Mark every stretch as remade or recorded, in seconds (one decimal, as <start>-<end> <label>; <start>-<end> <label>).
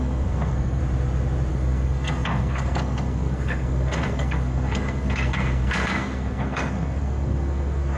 0.0-0.8 remade; 0.8-1.5 recorded; 1.5-8.0 remade